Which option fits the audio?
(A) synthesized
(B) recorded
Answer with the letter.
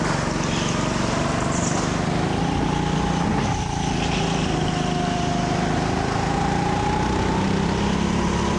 B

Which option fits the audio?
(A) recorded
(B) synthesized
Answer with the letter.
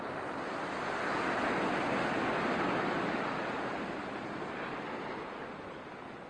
A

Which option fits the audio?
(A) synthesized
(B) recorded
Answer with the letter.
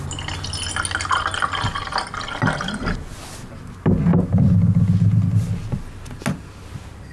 B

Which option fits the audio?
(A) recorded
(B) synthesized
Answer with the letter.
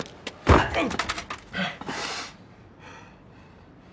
A